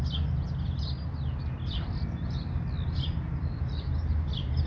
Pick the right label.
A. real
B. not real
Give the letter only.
A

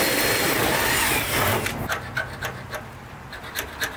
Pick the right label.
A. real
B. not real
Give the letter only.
A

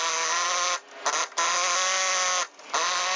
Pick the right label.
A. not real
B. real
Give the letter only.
B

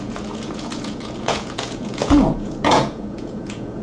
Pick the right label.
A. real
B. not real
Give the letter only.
B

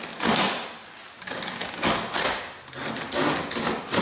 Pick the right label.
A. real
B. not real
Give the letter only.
A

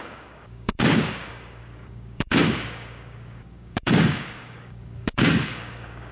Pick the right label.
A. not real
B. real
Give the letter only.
A